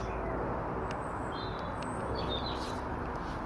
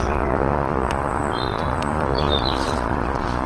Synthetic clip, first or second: second